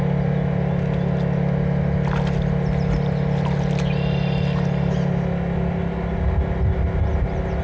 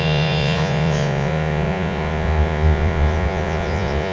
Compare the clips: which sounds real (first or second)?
first